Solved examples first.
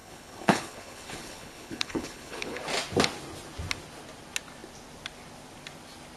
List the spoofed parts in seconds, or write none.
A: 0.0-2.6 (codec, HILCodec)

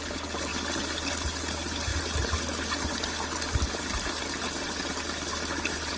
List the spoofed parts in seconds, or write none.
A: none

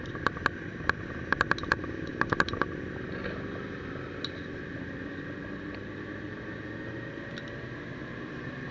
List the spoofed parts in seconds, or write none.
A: none

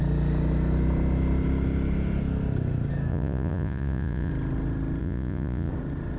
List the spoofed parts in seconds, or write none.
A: 3.1-4.3 (vocoder, Vocos); 5.0-5.7

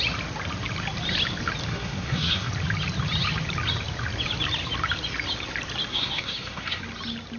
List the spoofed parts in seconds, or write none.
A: 1.7-2.5 (codec, SNAC); 5.9-6.8